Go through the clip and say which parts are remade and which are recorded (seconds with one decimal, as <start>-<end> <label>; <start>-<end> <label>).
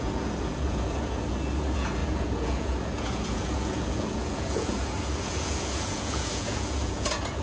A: 0.0-7.4 remade